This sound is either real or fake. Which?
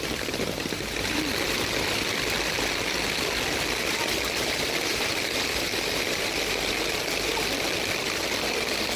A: real